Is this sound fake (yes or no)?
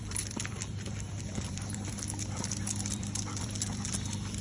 yes